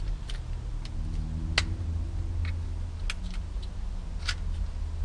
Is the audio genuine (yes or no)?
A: yes